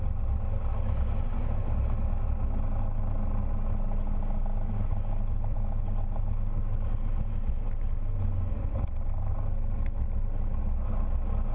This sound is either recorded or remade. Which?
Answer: recorded